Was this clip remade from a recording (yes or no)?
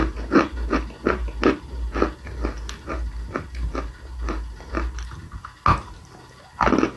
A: no